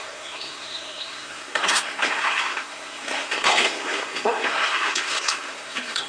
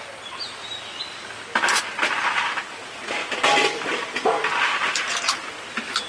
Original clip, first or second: second